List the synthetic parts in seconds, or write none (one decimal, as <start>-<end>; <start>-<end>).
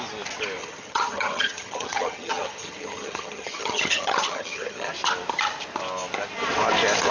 0.6-4.9